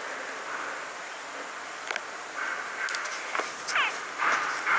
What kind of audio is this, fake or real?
real